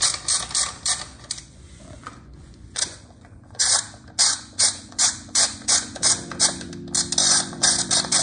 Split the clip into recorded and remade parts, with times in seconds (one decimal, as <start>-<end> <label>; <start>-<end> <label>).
0.0-1.1 recorded; 1.1-3.8 remade; 3.8-4.2 recorded; 4.2-6.7 remade; 6.7-7.2 recorded; 7.2-8.2 remade